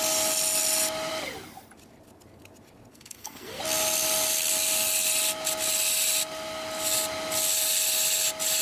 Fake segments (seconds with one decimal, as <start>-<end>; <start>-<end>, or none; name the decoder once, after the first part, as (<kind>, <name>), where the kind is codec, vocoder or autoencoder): 2.9-3.6 (codec, SNAC)